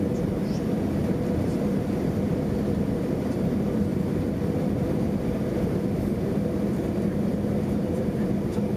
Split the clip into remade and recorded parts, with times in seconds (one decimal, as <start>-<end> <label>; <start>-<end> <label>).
0.0-2.3 remade; 2.3-3.0 recorded; 3.0-8.8 remade